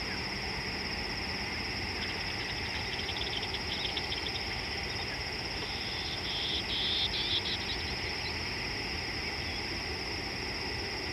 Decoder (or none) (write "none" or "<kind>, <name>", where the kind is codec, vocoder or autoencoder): none